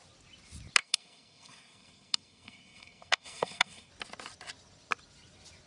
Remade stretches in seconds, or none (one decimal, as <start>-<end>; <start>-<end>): 0.8-3.9

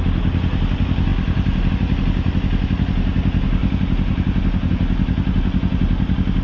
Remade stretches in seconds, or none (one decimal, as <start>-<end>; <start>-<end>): none

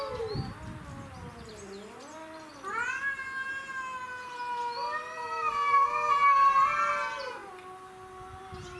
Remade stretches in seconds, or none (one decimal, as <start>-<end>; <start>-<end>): none

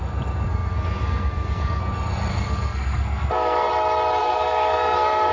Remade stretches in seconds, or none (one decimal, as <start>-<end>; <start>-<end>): 0.5-1.8; 2.3-3.7; 4.2-5.3

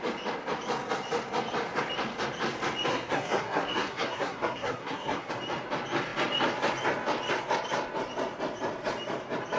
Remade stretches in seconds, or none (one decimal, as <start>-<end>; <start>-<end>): 2.9-5.3

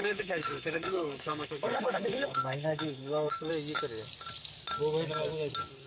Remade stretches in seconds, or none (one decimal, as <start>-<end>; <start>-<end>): 0.0-3.5